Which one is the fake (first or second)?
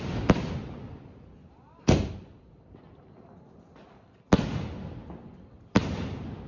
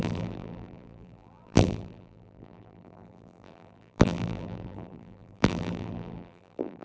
second